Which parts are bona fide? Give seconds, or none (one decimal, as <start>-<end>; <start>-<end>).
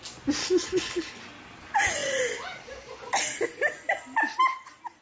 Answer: 0.0-0.4; 1.2-5.0